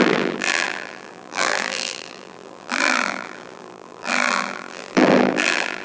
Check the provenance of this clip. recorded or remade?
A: remade